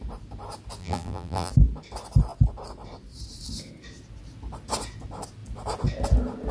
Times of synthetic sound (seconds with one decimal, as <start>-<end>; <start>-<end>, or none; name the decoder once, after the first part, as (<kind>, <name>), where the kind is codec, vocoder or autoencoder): 0.8-1.5 (vocoder, BigVGAN v2)